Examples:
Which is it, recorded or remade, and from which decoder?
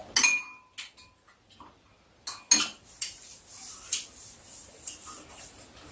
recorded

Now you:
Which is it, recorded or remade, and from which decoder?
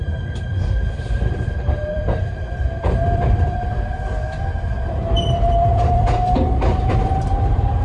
remade, vocoder, BigVGAN v2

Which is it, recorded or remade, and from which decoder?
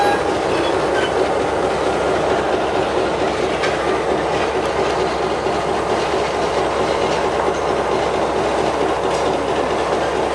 recorded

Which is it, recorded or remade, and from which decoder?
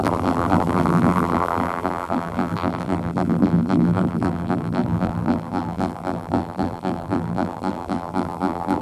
remade, vocoder, BigVGAN v2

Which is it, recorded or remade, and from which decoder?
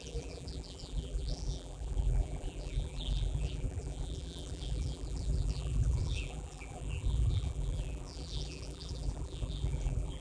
remade, vocoder, BigVGAN v2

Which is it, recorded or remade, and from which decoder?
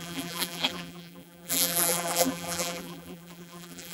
remade, vocoder, BigVGAN v2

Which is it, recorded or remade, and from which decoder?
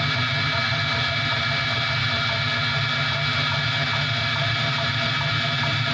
recorded